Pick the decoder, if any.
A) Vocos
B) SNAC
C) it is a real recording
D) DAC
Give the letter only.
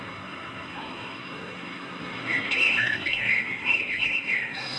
B